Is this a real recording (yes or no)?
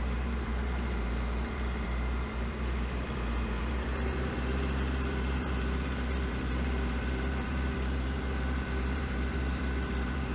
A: no